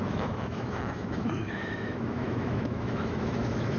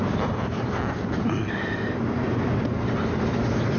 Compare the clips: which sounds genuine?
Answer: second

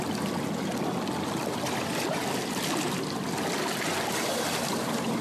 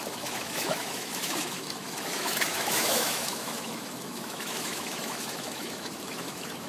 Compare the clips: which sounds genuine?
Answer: first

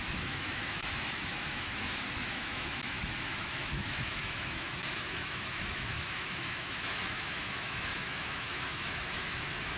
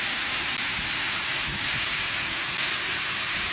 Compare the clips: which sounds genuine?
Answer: second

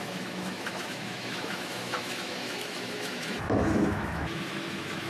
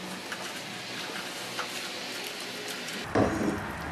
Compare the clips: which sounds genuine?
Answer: second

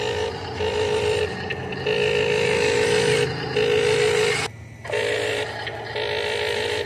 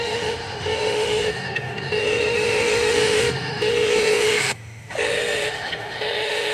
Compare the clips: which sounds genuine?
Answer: first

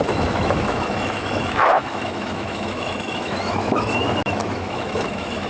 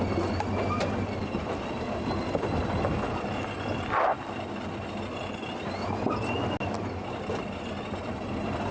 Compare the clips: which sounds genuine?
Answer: second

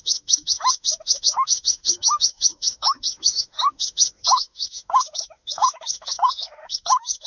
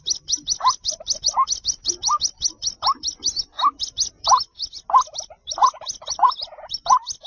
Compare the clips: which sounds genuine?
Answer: second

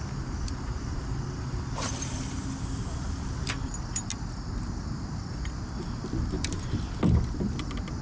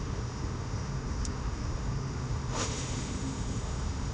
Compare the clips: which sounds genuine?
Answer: first